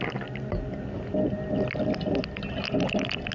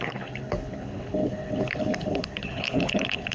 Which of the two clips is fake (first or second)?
second